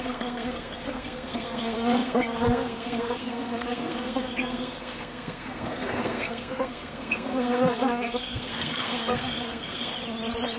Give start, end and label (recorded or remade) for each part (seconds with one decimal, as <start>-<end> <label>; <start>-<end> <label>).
0.0-9.9 remade; 9.9-10.6 recorded